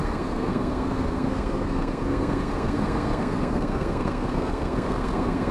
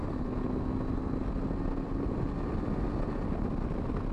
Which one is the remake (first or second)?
first